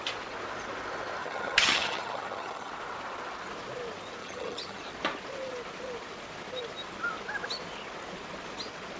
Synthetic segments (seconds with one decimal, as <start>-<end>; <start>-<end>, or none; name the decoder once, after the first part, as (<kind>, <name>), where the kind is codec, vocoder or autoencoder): 1.2-2.7 (vocoder, HiFi-GAN); 4.2-4.8